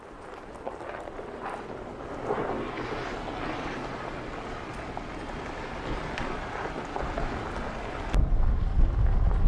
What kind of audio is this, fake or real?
real